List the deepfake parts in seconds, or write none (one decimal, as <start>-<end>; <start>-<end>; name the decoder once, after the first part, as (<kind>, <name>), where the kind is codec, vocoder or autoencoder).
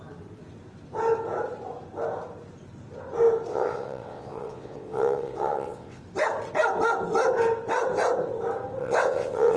3.5-6.0 (vocoder, WaveNeXt); 8.8-9.6